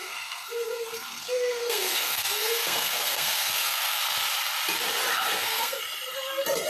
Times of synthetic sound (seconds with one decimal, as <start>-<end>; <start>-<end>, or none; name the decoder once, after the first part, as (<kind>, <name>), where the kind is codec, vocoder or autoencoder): 0.0-4.0 (codec, SNAC); 5.1-5.8